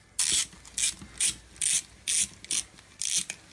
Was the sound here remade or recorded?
recorded